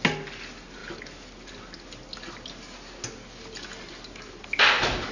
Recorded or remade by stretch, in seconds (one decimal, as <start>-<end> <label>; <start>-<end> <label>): 0.0-5.1 recorded